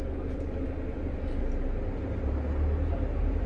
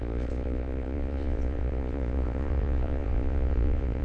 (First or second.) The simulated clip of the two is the second